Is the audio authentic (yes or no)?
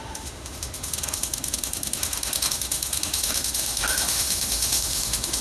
no